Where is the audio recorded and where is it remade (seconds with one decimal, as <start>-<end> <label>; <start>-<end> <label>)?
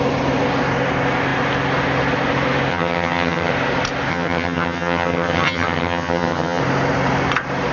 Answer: 0.0-2.7 recorded; 2.7-3.5 remade; 3.5-4.1 recorded; 4.1-6.6 remade; 6.6-7.7 recorded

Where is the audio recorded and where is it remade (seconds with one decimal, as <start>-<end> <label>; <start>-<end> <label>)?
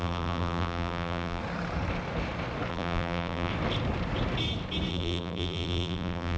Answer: 0.0-1.4 remade; 1.4-2.7 recorded; 2.7-3.5 remade; 3.5-4.9 recorded; 4.9-6.4 remade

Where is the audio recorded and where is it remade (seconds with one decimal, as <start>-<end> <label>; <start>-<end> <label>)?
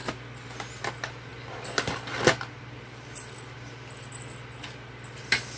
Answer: 0.0-5.6 recorded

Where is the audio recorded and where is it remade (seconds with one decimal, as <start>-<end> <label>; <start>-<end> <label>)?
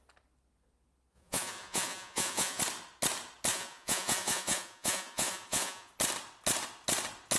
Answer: 0.0-1.1 recorded; 1.1-2.6 remade; 2.6-3.5 recorded; 3.5-5.9 remade; 5.9-7.4 recorded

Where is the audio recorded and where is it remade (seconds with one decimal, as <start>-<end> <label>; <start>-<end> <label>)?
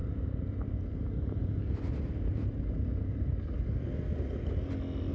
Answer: 0.0-5.1 recorded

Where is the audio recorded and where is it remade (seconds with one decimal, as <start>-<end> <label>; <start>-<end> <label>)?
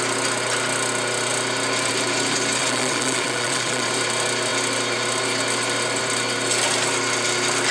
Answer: 0.0-2.6 recorded; 2.6-3.9 remade; 3.9-7.7 recorded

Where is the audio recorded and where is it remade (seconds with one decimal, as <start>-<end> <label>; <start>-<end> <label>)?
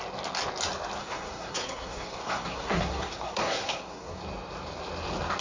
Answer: 0.0-1.0 recorded; 1.0-4.2 remade; 4.2-5.4 recorded